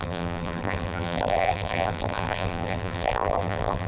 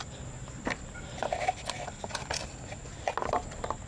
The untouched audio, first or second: second